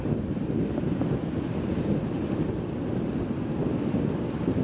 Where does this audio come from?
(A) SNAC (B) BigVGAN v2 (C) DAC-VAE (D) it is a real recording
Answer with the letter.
D